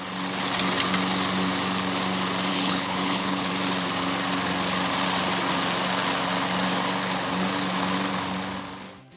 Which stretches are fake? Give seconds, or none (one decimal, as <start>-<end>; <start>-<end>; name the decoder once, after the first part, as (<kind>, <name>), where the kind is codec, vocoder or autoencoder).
2.5-3.5 (codec, HILCodec)